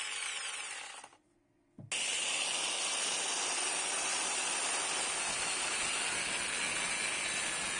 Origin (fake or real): real